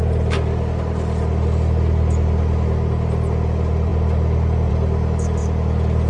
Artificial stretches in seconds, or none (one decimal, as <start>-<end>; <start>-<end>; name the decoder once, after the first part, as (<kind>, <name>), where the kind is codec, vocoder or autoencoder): none